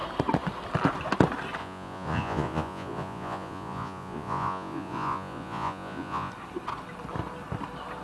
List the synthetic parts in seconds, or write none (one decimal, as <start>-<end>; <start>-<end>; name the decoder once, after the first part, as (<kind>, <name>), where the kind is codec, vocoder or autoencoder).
1.6-6.3 (vocoder, Vocos)